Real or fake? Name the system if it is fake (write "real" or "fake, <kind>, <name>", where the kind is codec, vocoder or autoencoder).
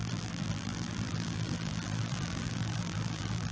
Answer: fake, vocoder, BigVGAN v2